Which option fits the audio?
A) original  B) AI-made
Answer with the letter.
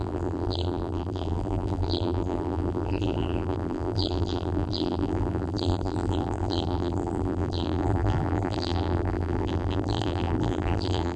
B